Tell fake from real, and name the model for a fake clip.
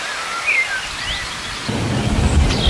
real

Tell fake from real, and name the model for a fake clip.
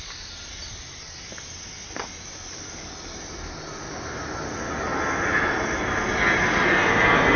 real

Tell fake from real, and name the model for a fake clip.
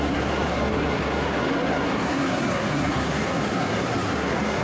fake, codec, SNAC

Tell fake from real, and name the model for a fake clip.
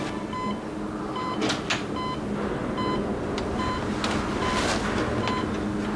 real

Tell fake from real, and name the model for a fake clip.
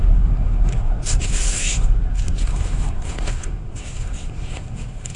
fake, codec, SNAC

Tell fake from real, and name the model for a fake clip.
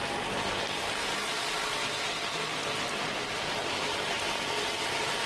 real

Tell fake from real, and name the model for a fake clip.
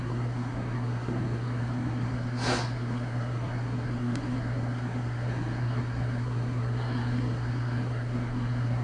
fake, codec, SNAC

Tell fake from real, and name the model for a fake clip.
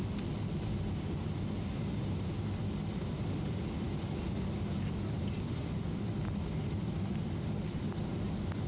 real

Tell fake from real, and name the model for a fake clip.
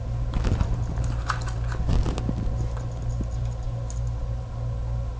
real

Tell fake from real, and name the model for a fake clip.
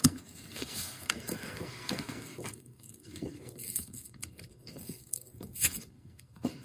fake, codec, SNAC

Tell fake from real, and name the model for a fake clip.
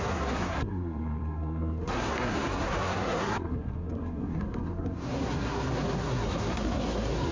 fake, codec, SNAC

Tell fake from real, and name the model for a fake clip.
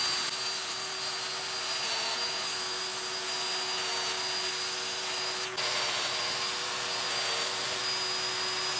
real